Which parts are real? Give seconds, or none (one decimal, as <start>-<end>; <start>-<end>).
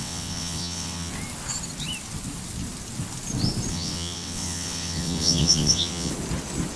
1.1-3.7; 6.1-6.8